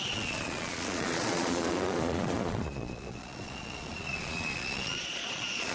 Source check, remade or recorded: remade